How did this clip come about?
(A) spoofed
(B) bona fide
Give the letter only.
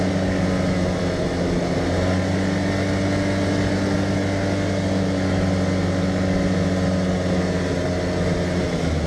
B